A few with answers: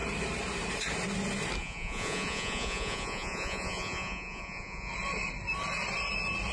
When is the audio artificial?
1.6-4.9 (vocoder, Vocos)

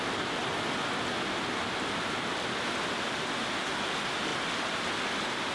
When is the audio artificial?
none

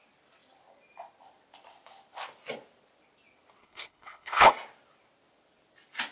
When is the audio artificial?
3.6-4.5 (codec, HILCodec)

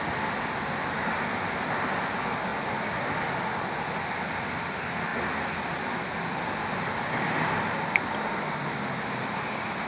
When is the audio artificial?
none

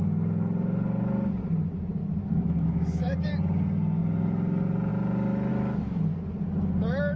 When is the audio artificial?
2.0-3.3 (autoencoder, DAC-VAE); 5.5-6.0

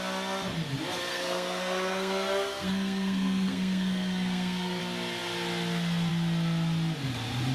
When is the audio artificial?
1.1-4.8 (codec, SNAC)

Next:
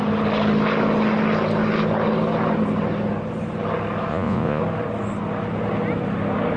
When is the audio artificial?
4.1-4.6 (vocoder, Vocos)